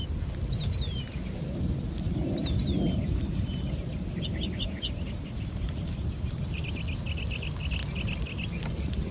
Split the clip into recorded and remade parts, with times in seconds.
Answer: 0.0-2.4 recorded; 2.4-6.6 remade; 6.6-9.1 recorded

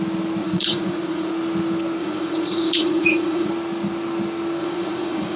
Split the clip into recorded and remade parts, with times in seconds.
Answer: 0.0-0.4 recorded; 0.4-1.3 remade; 1.3-2.0 recorded; 2.0-3.5 remade; 3.5-4.6 recorded; 4.6-5.4 remade

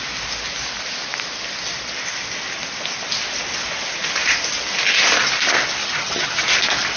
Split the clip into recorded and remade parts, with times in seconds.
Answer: 0.0-5.8 recorded; 5.8-6.4 remade; 6.4-7.0 recorded

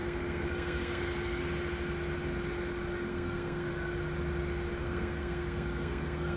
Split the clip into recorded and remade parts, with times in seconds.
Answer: 0.0-1.4 remade; 1.4-3.1 recorded; 3.1-3.7 remade; 3.7-4.8 recorded; 4.8-6.4 remade

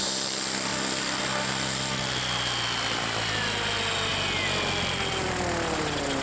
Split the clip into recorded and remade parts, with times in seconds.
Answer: 0.0-6.2 recorded